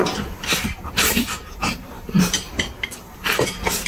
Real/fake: fake